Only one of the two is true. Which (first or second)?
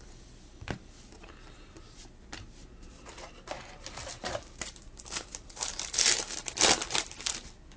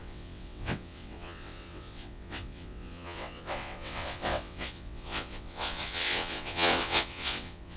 first